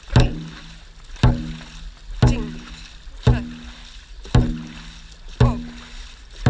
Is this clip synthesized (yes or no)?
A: no